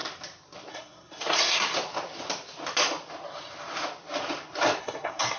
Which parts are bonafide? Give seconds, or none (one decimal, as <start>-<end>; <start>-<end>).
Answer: 0.0-0.7; 1.7-4.8